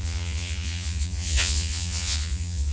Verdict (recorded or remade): remade